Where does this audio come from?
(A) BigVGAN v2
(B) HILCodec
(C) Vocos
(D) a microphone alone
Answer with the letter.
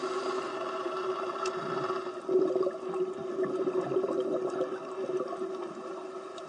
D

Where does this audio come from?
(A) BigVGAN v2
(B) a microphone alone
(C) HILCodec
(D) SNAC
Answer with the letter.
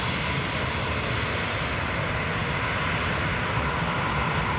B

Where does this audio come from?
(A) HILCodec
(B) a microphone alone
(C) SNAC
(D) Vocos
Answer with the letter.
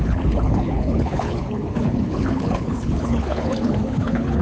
A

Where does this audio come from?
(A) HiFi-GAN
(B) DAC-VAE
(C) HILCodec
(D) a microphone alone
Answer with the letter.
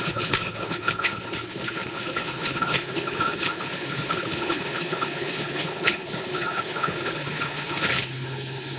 C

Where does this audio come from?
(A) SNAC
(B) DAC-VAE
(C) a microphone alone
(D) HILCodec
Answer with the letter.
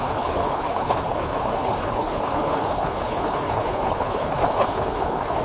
D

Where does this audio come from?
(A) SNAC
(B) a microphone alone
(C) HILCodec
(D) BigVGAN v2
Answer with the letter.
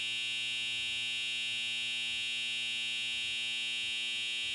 B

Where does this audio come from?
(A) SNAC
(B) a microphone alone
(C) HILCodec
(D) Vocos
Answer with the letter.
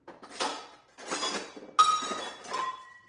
B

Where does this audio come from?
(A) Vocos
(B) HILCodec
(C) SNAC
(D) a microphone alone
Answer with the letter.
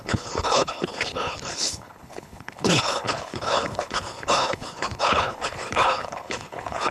B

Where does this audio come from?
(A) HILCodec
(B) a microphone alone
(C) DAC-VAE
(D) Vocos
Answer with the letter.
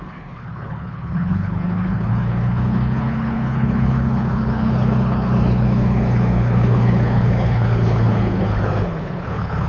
A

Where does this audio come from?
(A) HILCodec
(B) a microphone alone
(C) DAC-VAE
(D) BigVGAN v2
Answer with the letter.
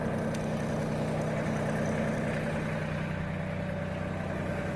B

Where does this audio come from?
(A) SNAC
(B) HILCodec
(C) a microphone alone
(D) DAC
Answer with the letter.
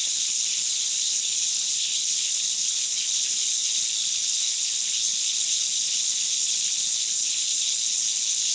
B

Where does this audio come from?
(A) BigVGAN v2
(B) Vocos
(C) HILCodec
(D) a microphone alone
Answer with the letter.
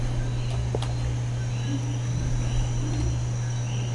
D